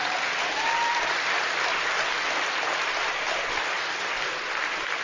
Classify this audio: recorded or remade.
remade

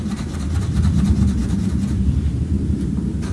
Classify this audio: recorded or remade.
remade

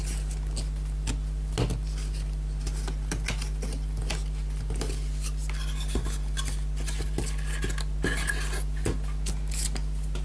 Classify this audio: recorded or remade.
recorded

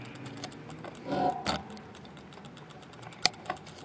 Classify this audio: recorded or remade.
recorded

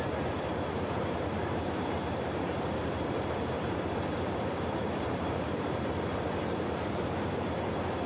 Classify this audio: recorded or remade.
remade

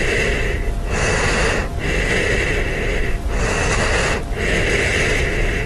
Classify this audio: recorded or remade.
recorded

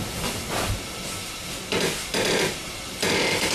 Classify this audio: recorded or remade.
remade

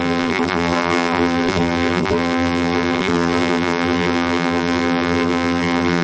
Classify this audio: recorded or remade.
remade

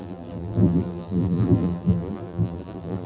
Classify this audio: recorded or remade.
remade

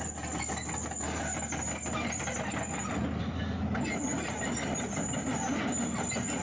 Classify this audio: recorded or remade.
remade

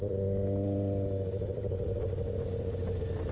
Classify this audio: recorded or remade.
remade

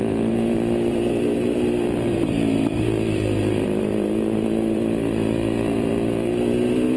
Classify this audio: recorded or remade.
remade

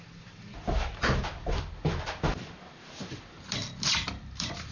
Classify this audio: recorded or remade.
remade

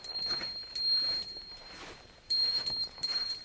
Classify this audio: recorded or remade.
remade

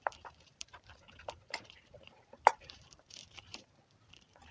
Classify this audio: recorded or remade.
remade